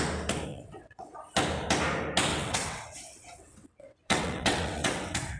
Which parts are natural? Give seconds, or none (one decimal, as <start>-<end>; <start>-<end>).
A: 0.0-0.5; 1.1-2.3